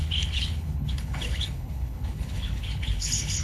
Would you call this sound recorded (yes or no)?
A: no